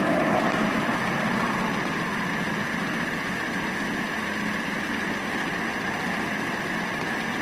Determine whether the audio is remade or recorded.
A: recorded